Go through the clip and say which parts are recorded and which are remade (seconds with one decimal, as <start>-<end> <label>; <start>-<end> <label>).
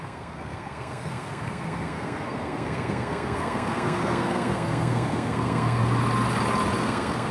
0.0-5.8 remade; 5.8-6.8 recorded; 6.8-7.3 remade